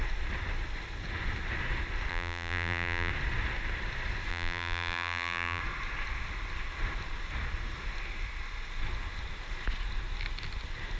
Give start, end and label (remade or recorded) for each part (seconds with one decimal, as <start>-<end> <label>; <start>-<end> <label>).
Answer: 0.0-2.1 recorded; 2.1-3.1 remade; 3.1-4.3 recorded; 4.3-5.6 remade; 5.6-11.0 recorded